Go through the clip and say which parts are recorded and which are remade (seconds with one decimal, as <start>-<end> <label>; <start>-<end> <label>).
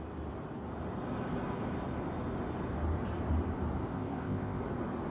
0.0-3.9 recorded; 3.9-4.6 remade; 4.6-5.1 recorded